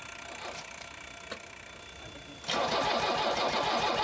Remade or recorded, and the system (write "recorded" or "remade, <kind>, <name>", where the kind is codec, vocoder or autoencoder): recorded